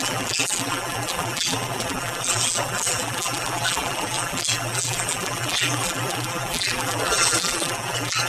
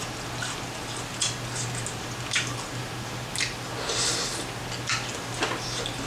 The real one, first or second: second